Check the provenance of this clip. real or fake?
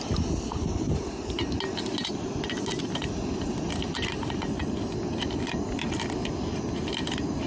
real